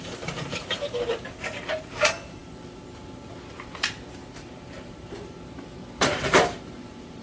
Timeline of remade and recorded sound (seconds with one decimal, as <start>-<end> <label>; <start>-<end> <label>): 0.0-2.4 remade; 2.4-3.7 recorded; 3.7-7.2 remade